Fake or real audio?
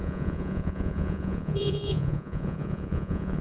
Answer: fake